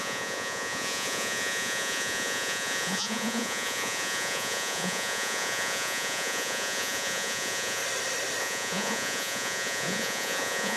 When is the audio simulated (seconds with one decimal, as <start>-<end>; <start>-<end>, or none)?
0.0-7.8; 8.4-10.8